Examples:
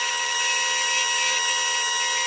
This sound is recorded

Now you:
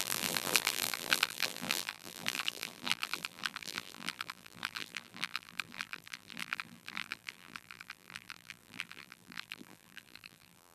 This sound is remade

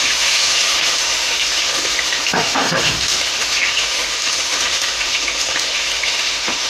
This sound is remade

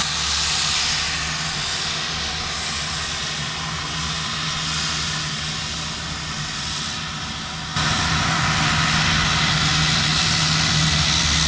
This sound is recorded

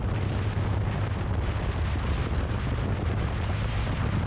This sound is recorded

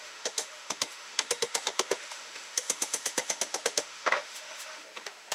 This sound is remade